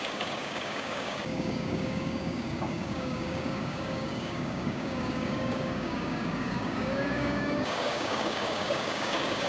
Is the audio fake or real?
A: fake